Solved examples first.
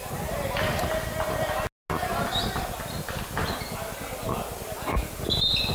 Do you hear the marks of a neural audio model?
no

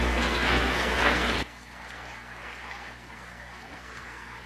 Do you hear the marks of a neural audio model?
yes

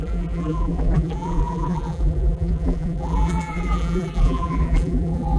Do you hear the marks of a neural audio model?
yes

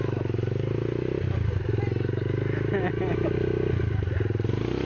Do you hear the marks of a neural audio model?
no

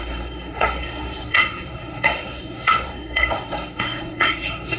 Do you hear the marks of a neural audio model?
yes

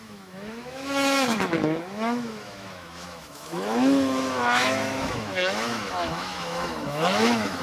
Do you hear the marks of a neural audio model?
yes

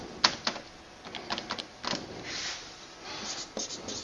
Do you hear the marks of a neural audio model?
no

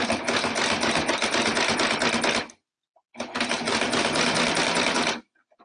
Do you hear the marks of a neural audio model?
no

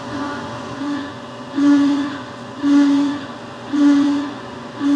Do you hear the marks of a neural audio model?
yes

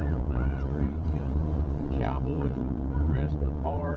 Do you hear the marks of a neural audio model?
yes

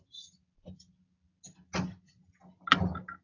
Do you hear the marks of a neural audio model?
no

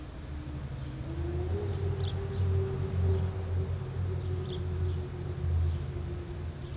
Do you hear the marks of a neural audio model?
no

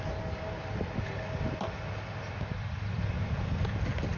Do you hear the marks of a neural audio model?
no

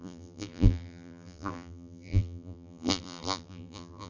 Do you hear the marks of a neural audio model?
yes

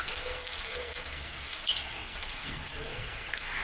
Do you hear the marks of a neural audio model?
yes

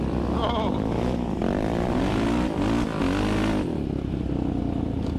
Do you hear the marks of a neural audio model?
no